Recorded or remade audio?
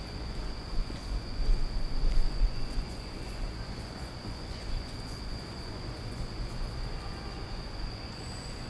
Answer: remade